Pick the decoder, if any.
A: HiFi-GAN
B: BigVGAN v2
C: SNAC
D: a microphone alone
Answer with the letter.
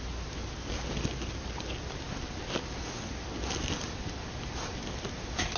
D